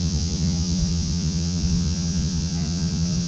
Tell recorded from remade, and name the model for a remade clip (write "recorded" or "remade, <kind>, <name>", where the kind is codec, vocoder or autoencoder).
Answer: remade, vocoder, Vocos